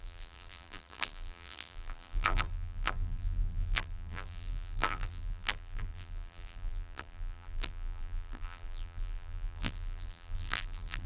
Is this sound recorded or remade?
remade